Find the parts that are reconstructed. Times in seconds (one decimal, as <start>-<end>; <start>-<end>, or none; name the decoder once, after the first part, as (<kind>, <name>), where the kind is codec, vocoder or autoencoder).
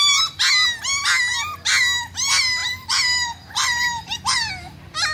2.6-4.5 (vocoder, BigVGAN v2)